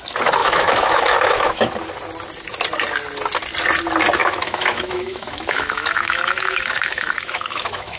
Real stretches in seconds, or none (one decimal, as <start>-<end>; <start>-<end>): 0.0-0.4; 1.7-4.2